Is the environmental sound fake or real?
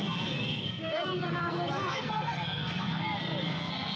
fake